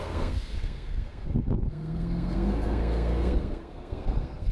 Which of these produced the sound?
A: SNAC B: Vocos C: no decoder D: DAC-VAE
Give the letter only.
A